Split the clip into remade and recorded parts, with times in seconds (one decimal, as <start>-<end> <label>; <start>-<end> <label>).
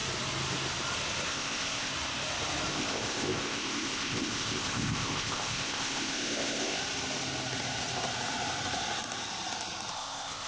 0.0-1.3 recorded; 1.3-1.9 remade; 1.9-2.7 recorded; 2.7-6.8 remade; 6.8-9.9 recorded; 9.9-10.5 remade